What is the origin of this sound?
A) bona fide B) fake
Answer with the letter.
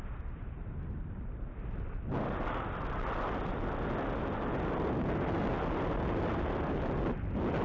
A